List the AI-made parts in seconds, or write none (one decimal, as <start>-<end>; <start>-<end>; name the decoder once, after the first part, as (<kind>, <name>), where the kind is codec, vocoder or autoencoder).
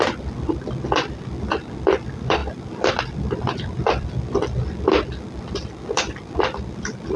0.0-2.4 (vocoder, BigVGAN v2); 3.0-7.2